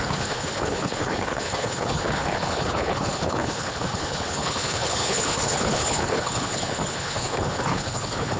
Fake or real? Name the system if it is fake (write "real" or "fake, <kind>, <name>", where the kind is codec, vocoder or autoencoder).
fake, codec, HILCodec